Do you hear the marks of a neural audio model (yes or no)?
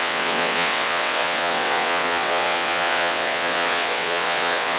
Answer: yes